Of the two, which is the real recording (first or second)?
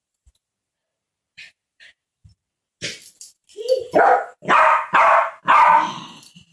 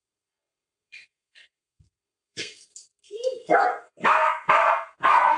first